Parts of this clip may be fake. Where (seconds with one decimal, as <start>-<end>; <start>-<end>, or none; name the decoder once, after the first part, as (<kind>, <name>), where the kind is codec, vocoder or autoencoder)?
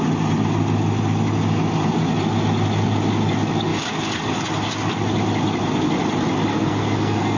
6.5-7.4 (codec, SNAC)